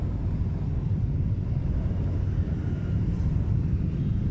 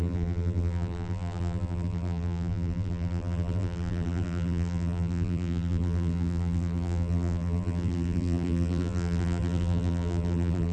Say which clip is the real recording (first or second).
first